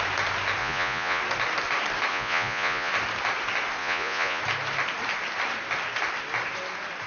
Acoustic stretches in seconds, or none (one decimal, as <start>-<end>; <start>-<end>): 0.0-0.6; 1.2-2.1; 2.9-3.8; 4.4-7.1